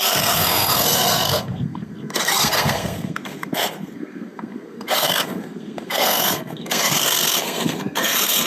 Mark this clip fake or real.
fake